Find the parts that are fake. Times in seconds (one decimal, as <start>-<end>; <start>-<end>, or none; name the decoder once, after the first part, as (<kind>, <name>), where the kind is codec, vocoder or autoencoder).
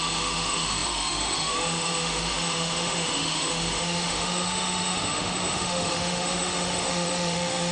0.0-7.7 (autoencoder, DAC-VAE)